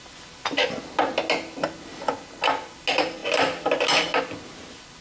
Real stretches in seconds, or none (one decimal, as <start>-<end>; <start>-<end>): 0.0-5.0